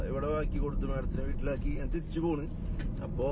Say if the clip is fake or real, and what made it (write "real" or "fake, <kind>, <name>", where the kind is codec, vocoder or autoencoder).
real